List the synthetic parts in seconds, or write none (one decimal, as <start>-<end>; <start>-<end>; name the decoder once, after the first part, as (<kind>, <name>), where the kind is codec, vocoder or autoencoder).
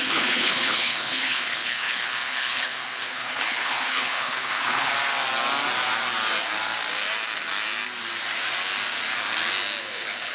0.0-4.9 (codec, HILCodec); 9.8-10.3